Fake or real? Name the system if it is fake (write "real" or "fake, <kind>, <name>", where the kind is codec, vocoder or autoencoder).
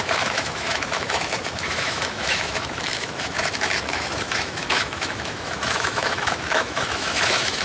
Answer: fake, autoencoder, DAC-VAE